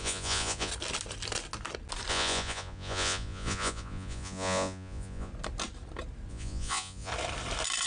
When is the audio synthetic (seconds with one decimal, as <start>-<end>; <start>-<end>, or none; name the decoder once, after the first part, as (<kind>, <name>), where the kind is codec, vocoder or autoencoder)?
0.0-0.7 (vocoder, Vocos); 2.1-5.3; 6.3-7.1